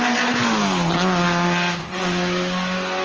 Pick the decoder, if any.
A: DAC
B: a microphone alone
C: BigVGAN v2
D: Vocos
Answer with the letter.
B